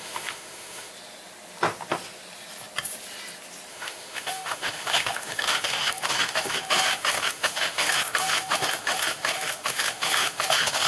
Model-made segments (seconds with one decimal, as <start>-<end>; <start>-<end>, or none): 0.0-0.9; 3.7-10.9